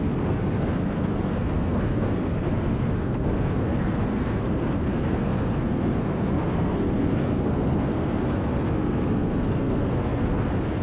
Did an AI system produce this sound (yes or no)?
yes